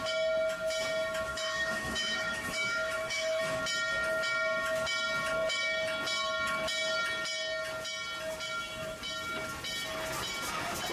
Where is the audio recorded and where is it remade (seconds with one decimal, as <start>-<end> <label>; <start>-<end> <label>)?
0.0-1.3 recorded; 1.3-3.4 remade; 3.4-10.9 recorded